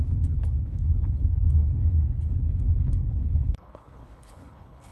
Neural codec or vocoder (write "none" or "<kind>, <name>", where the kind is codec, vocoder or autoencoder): codec, HILCodec